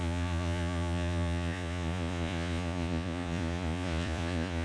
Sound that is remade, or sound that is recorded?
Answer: remade